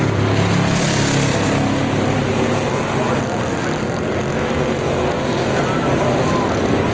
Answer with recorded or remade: recorded